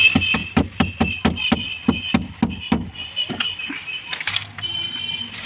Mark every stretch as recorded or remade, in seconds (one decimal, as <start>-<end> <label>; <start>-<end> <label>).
0.0-5.5 recorded